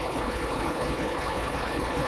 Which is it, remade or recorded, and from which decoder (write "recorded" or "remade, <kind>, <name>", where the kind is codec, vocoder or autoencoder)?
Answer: remade, codec, HILCodec